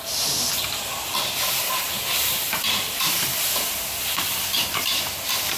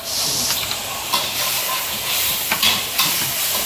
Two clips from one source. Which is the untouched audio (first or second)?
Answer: second